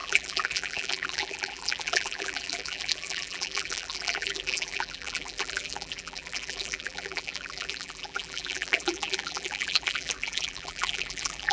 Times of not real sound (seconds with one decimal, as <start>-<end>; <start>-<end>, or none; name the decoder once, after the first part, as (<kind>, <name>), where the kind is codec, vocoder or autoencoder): 0.0-11.5 (vocoder, BigVGAN v2)